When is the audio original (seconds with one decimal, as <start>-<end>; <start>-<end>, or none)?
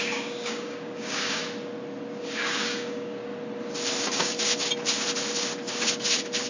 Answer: 1.4-2.2; 3.3-4.0; 4.7-6.5